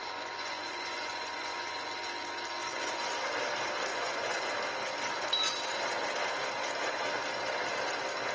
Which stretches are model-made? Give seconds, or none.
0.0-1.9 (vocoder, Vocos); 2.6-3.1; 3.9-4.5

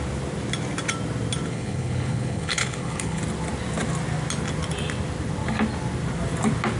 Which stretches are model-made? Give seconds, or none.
1.5-3.2 (codec, HILCodec)

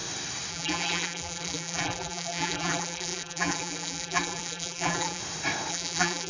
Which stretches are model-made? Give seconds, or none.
0.5-5.2 (vocoder, BigVGAN v2); 5.7-6.3

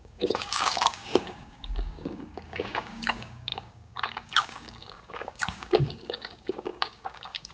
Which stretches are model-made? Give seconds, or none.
0.0-7.5 (codec, DAC)

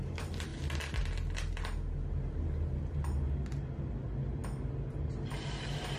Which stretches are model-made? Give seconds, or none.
none